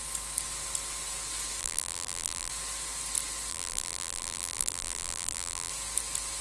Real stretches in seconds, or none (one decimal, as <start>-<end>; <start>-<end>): 0.0-1.6; 2.5-3.5; 5.7-6.4